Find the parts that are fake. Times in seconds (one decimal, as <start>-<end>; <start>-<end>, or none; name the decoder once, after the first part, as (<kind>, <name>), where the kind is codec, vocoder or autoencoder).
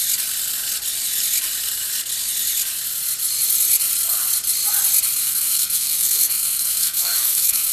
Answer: 5.2-7.7 (codec, SNAC)